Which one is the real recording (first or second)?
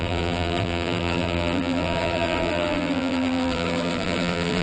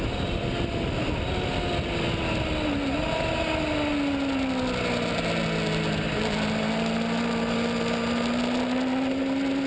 second